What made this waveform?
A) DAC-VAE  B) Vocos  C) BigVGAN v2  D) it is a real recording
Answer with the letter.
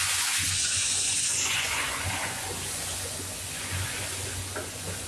B